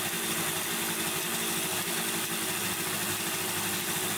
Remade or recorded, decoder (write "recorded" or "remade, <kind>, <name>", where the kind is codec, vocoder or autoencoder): recorded